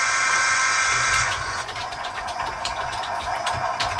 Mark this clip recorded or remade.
remade